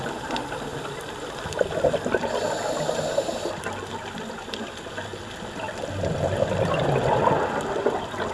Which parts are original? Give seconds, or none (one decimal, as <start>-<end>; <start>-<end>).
0.0-8.3